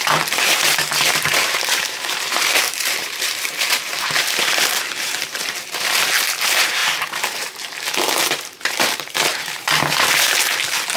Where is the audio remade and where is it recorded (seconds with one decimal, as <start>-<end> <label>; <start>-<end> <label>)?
0.0-11.0 remade